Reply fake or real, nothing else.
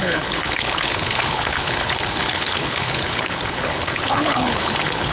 fake